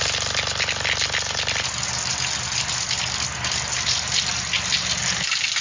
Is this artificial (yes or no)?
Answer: no